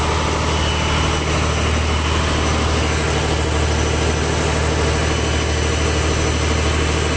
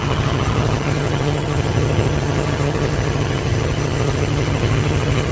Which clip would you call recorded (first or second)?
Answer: first